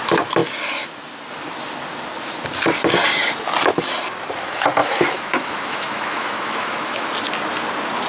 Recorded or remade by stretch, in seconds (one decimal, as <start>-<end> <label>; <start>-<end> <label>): 0.0-4.8 recorded; 4.8-7.1 remade; 7.1-8.1 recorded